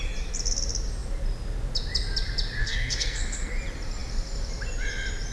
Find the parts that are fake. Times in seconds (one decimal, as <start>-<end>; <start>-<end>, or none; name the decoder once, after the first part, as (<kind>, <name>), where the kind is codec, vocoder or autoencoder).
2.6-3.5 (codec, SNAC)